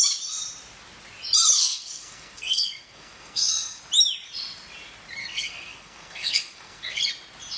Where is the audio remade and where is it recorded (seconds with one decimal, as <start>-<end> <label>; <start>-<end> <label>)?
0.0-1.6 recorded; 1.6-3.8 remade; 3.8-5.2 recorded; 5.2-7.0 remade; 7.0-7.6 recorded